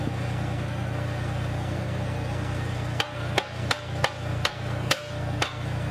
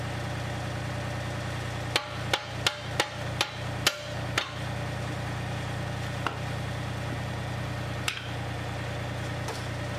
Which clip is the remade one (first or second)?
first